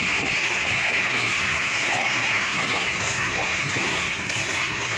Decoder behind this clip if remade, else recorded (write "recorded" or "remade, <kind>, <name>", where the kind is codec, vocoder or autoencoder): remade, codec, SNAC